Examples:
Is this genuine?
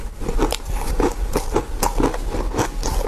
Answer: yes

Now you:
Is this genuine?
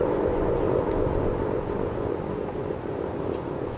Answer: no